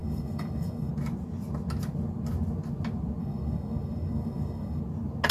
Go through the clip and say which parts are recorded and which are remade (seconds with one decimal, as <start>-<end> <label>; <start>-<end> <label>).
0.0-0.9 remade; 0.9-3.2 recorded; 3.2-4.8 remade; 4.8-5.3 recorded

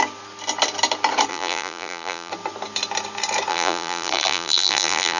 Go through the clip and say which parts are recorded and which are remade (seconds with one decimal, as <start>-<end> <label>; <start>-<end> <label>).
0.0-1.3 recorded; 1.3-2.3 remade; 2.3-3.5 recorded; 3.5-5.2 remade

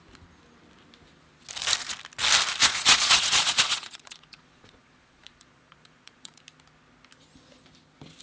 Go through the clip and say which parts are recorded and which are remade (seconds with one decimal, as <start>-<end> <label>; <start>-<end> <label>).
0.0-2.6 recorded; 2.6-6.4 remade; 6.4-8.2 recorded